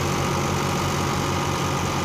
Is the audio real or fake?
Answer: real